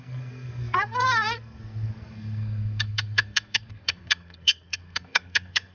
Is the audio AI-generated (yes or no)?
yes